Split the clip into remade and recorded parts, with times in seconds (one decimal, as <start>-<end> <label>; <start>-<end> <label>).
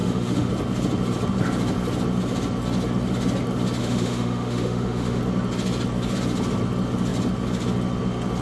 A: 0.0-0.5 remade; 0.5-3.8 recorded; 3.8-5.2 remade; 5.2-8.4 recorded